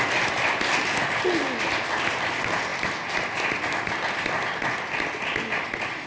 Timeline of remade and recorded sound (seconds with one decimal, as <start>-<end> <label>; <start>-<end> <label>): 0.0-6.1 recorded